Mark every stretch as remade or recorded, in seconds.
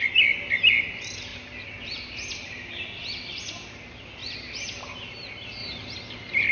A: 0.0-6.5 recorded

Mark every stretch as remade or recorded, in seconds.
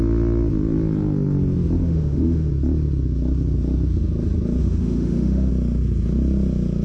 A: 0.0-1.8 recorded; 1.8-2.5 remade; 2.5-4.6 recorded; 4.6-5.5 remade; 5.5-6.8 recorded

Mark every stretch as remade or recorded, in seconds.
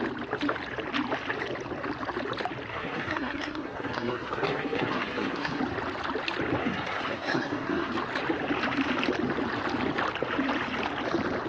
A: 0.0-2.7 recorded; 2.7-5.6 remade; 5.6-6.6 recorded; 6.6-7.9 remade; 7.9-11.5 recorded